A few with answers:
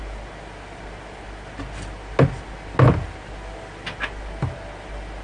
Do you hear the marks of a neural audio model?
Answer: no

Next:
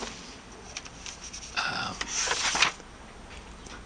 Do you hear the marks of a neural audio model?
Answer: no